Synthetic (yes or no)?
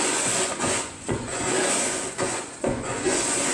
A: yes